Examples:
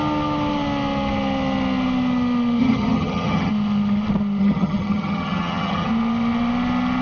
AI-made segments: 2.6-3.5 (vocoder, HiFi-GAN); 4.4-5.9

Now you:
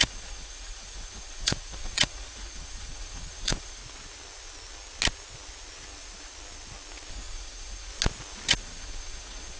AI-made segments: 0.0-3.8 (vocoder, Vocos); 7.1-7.9; 8.5-9.6

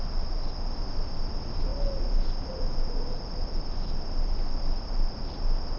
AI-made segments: none

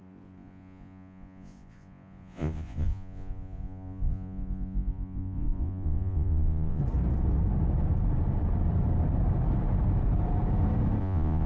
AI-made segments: 0.0-6.8 (vocoder, Vocos); 11.0-11.5

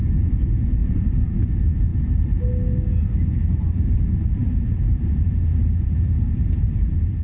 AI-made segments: 0.8-1.4 (vocoder, BigVGAN v2); 1.9-2.5; 3.4-7.2

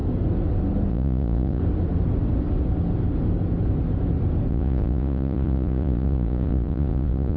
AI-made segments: 0.9-1.6 (vocoder, Vocos); 4.5-7.4

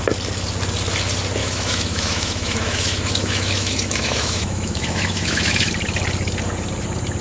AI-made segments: 1.4-5.7 (autoencoder, DAC-VAE)

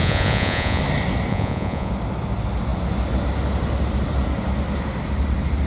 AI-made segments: 0.0-0.8 (vocoder, Vocos); 1.3-1.9